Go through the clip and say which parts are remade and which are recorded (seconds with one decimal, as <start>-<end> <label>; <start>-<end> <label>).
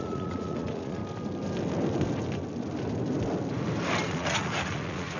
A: 0.0-1.0 remade; 1.0-4.1 recorded; 4.1-5.2 remade